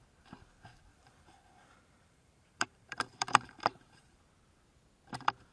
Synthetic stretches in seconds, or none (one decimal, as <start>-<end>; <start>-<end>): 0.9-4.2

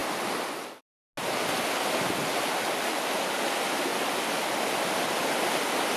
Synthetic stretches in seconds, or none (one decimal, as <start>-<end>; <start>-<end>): 3.9-5.1

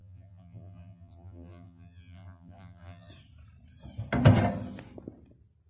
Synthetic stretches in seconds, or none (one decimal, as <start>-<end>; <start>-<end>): 0.0-3.1

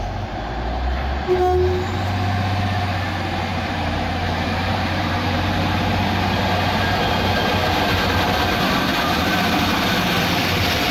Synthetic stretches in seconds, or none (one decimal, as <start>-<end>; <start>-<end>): 3.5-5.5; 8.9-9.6